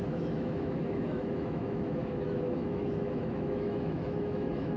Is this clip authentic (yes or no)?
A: no